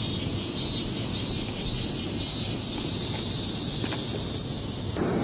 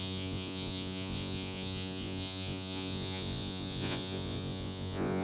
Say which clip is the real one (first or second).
first